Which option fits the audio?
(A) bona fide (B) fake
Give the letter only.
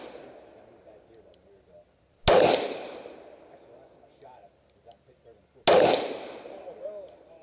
A